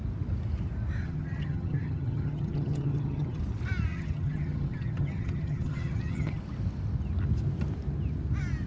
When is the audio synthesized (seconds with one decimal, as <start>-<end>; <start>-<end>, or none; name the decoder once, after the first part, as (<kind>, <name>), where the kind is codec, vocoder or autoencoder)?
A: 1.0-3.4 (vocoder, HiFi-GAN); 3.9-6.4